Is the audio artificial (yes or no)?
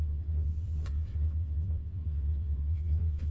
yes